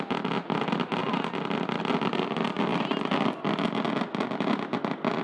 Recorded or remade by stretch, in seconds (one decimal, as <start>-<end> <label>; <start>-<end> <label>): 0.0-5.2 recorded